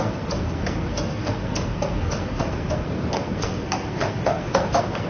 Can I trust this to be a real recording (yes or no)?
no